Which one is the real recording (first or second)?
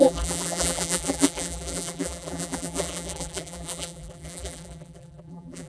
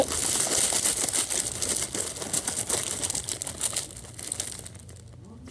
second